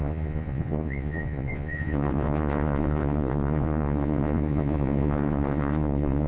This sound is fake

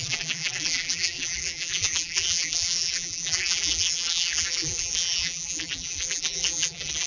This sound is fake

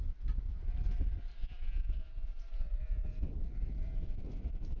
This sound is real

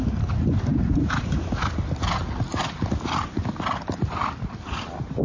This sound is real